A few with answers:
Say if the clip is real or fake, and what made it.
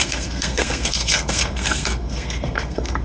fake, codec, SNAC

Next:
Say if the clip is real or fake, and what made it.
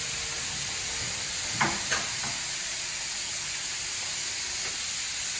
real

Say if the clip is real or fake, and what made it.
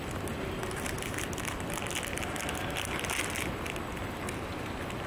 real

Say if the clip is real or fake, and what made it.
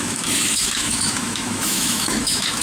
fake, autoencoder, DAC-VAE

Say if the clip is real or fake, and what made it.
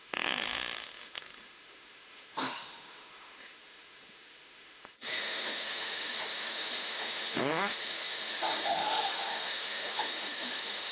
fake, autoencoder, DAC-VAE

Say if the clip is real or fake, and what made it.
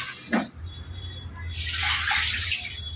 real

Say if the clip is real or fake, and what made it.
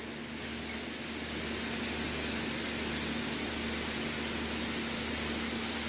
real